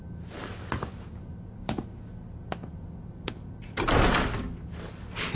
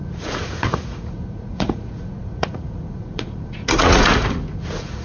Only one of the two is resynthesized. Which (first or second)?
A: second